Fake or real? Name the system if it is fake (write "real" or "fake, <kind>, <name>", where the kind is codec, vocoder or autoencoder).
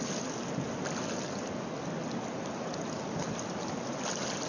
real